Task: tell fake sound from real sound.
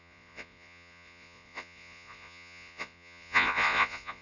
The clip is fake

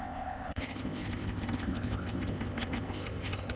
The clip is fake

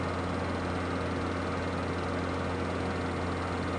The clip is real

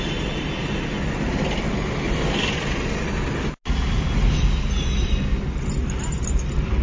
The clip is real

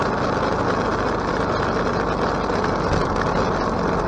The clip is real